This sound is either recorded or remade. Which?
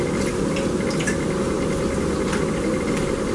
recorded